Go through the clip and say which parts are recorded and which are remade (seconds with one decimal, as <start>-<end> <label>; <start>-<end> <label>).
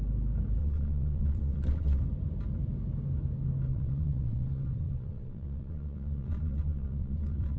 0.0-0.6 recorded; 0.6-2.0 remade; 2.0-3.7 recorded; 3.7-7.6 remade